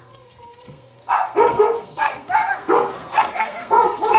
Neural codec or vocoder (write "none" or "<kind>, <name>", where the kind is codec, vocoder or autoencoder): codec, SNAC